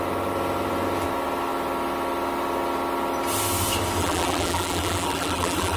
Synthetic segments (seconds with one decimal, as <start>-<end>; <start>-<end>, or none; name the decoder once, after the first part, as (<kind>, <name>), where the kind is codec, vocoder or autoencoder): 4.0-5.8 (vocoder, BigVGAN v2)